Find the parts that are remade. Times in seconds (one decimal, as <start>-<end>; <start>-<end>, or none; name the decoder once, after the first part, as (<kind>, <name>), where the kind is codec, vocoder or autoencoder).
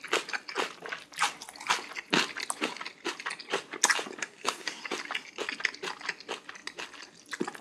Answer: 4.2-4.8 (codec, SNAC)